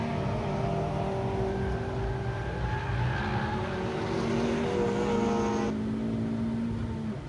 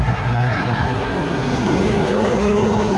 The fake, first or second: second